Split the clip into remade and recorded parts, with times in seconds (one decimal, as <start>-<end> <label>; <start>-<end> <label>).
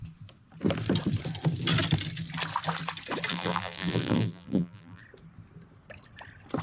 0.0-3.3 recorded; 3.3-5.0 remade; 5.0-6.6 recorded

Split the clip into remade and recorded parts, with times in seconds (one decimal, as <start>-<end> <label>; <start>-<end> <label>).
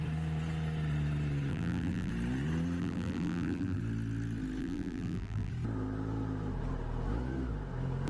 0.0-1.5 recorded; 1.5-2.1 remade; 2.1-2.8 recorded; 2.8-3.8 remade; 3.8-4.6 recorded; 4.6-5.5 remade; 5.5-8.1 recorded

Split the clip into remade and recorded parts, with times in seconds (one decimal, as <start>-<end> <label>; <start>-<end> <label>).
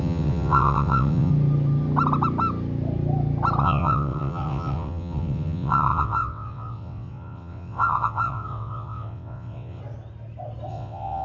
0.0-1.3 remade; 1.3-3.6 recorded; 3.6-9.8 remade; 9.8-10.7 recorded; 10.7-11.2 remade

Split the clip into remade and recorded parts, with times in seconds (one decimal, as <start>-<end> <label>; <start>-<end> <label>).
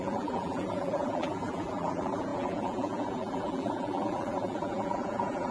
0.0-5.5 remade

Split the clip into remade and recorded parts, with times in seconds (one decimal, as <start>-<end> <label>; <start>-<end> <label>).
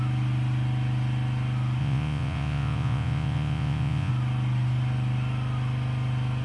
0.0-1.8 recorded; 1.8-4.1 remade; 4.1-6.4 recorded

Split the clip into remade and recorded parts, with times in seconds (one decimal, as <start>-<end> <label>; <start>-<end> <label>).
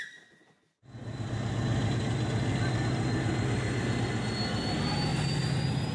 0.0-5.9 recorded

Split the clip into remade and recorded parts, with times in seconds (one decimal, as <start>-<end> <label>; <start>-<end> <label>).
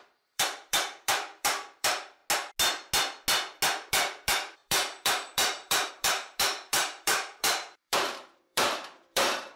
0.0-2.2 remade; 2.2-3.9 recorded; 3.9-9.6 remade